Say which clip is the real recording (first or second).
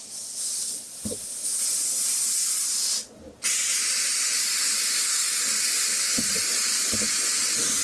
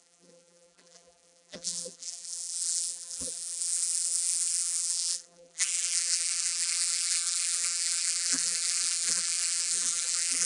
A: first